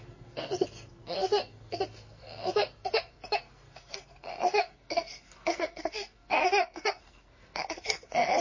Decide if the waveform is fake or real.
fake